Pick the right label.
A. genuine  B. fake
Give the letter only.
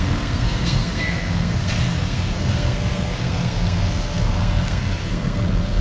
B